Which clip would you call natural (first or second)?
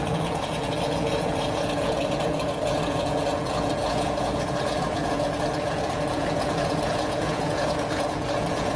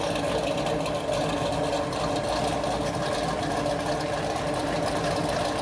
second